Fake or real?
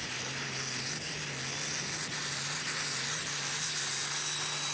real